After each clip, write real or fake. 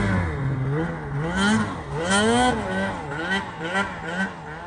real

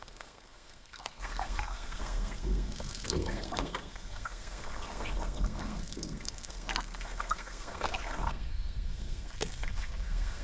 fake